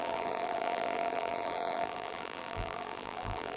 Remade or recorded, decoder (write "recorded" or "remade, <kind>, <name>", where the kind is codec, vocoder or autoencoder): remade, vocoder, BigVGAN v2